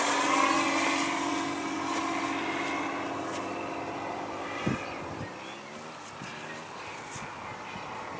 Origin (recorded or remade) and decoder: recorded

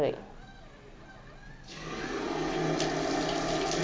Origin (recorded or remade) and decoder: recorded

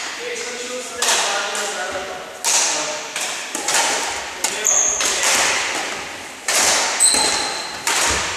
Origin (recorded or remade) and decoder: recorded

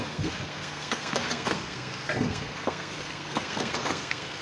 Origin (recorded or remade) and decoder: remade, codec, SNAC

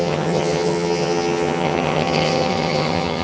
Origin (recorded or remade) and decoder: remade, vocoder, HiFi-GAN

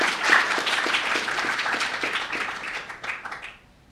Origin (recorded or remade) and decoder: remade, vocoder, BigVGAN v2